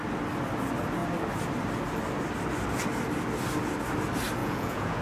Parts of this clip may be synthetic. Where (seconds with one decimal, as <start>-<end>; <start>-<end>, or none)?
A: 4.4-5.0